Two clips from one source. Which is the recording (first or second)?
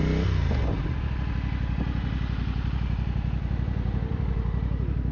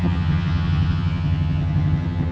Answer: first